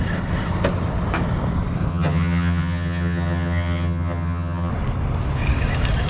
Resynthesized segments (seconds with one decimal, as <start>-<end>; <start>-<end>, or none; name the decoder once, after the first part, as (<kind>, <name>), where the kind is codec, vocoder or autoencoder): 1.9-4.7 (vocoder, HiFi-GAN)